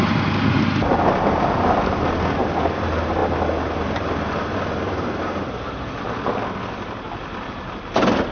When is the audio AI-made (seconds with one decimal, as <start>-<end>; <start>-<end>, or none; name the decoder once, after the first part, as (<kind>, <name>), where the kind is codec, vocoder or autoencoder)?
none